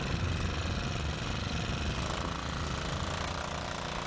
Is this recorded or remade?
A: recorded